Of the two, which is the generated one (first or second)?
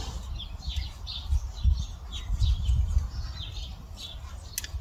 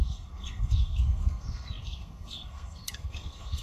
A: second